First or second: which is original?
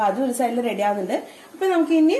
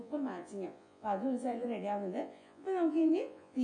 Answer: first